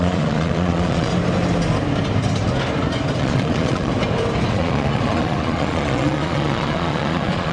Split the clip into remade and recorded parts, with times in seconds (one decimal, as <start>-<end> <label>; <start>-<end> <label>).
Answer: 0.0-1.1 remade; 1.1-3.2 recorded; 3.2-3.9 remade; 3.9-4.5 recorded; 4.5-7.5 remade